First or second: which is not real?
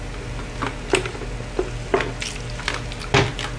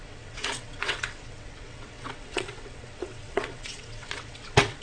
second